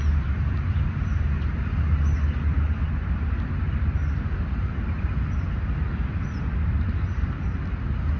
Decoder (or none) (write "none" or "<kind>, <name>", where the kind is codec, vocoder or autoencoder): none